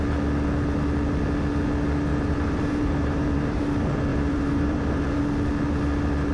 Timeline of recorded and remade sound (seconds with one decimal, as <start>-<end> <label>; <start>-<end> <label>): 0.0-2.1 recorded; 2.1-3.6 remade; 3.6-4.1 recorded; 4.1-5.2 remade; 5.2-6.3 recorded